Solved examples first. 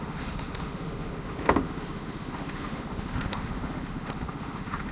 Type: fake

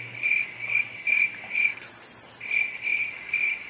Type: real